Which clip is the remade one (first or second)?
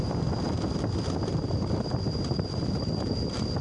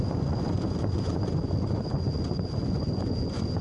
second